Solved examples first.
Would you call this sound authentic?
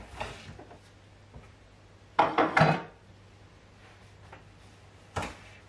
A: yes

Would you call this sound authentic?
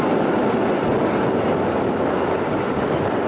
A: yes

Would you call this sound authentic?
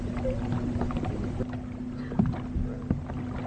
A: yes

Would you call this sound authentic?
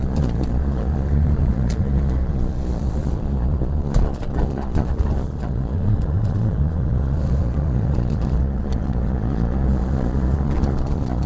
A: no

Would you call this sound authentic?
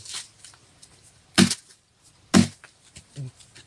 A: yes